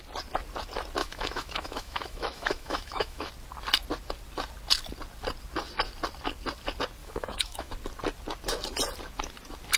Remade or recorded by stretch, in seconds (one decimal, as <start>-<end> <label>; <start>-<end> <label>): 0.0-1.0 recorded; 1.0-3.3 remade; 3.3-7.0 recorded; 7.0-7.7 remade; 7.7-9.8 recorded